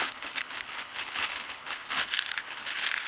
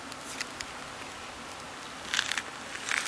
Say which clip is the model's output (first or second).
first